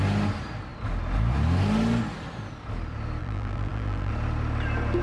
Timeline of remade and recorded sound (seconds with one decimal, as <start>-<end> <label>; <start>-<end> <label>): 0.0-3.2 recorded; 3.2-4.1 remade; 4.1-5.0 recorded